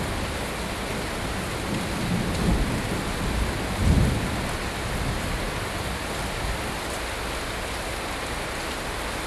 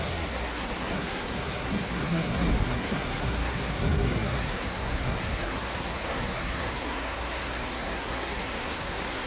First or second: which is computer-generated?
second